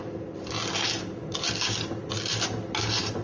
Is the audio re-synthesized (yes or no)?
no